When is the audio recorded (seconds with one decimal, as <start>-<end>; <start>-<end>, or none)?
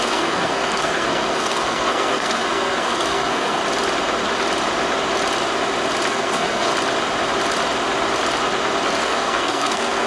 3.6-6.1; 6.7-9.0